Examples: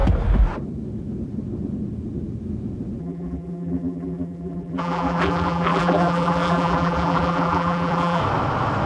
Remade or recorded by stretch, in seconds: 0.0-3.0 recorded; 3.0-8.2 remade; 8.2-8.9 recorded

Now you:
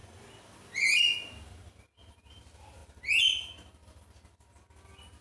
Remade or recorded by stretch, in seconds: 0.0-5.2 recorded

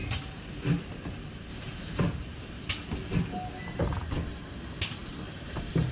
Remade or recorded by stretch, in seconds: 0.0-0.7 remade; 0.7-1.5 recorded; 1.5-2.0 remade; 2.0-5.9 recorded

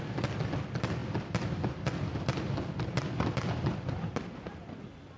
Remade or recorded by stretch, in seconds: 0.0-1.0 recorded; 1.0-4.1 remade; 4.1-5.2 recorded

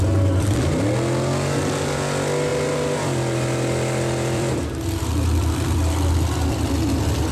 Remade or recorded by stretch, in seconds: 0.0-2.5 recorded; 2.5-6.7 remade; 6.7-7.3 recorded

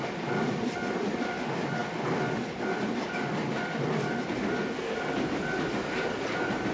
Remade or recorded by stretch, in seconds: 0.0-6.7 recorded